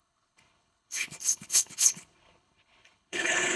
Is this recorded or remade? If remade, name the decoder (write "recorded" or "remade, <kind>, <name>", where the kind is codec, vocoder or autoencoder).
remade, codec, HILCodec